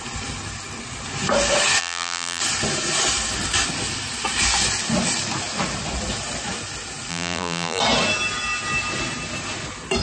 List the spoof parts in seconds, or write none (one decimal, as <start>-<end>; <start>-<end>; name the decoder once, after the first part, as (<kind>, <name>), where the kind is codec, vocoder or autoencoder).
1.8-2.4 (vocoder, BigVGAN v2); 7.1-7.8